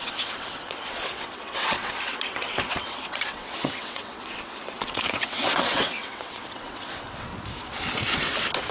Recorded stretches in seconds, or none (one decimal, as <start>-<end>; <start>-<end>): 7.3-8.7